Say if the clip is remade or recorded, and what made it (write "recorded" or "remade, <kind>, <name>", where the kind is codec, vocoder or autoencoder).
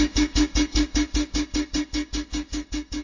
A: remade, codec, DAC